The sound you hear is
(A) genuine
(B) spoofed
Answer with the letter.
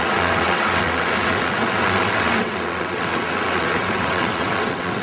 B